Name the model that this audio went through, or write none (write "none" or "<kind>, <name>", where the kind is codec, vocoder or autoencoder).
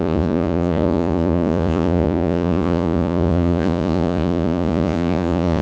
vocoder, Vocos